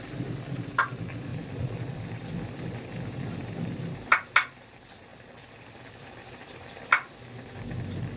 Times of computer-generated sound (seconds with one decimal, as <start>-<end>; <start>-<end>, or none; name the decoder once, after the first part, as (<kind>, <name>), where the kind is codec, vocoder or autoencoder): 1.3-2.2 (vocoder, BigVGAN v2); 5.1-7.2